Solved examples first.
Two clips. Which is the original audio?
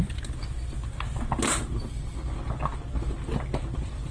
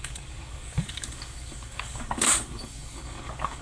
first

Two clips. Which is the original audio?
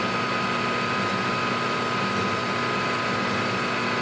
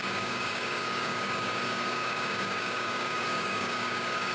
first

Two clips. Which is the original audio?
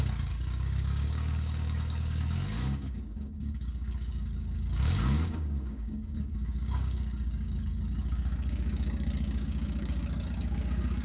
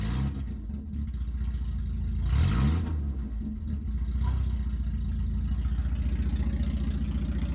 second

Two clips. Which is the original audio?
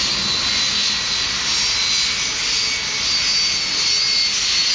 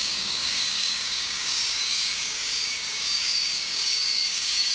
first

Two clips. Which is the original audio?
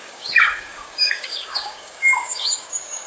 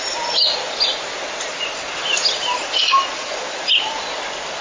second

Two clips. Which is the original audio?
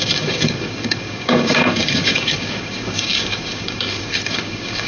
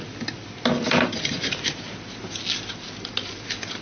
second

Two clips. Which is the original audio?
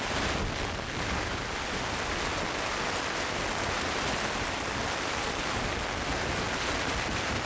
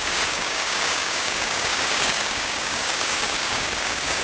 first